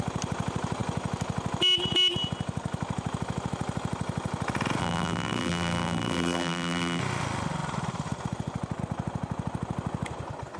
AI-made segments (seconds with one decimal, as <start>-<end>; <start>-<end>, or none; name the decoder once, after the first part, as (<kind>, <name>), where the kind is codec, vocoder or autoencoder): 4.8-7.0 (vocoder, BigVGAN v2)